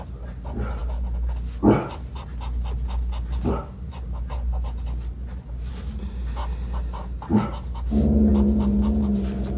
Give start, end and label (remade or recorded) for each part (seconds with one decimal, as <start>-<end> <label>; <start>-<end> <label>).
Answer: 0.0-9.6 recorded